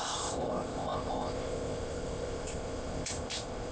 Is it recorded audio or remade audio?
remade